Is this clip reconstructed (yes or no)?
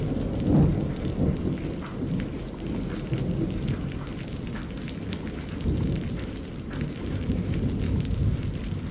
no